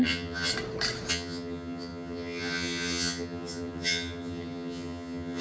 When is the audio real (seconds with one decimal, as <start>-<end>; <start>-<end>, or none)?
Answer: 0.5-1.1